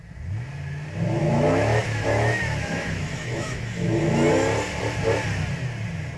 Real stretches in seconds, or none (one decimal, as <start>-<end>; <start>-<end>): 0.0-1.2; 3.9-6.2